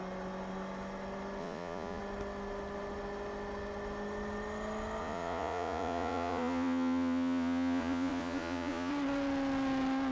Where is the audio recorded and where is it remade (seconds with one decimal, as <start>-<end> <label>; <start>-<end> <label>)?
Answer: 0.0-1.4 recorded; 1.4-2.0 remade; 2.0-5.0 recorded; 5.0-8.9 remade; 8.9-10.1 recorded